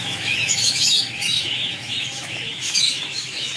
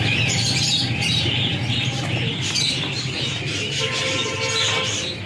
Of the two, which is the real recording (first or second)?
second